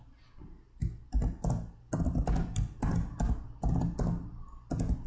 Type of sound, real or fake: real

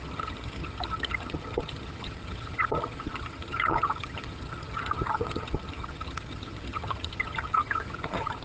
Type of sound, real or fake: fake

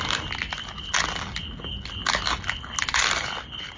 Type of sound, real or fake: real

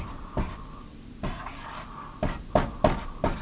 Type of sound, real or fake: real